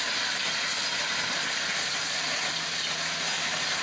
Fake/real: real